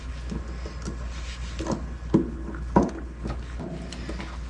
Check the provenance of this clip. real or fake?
real